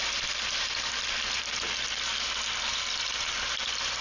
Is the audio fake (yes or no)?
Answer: no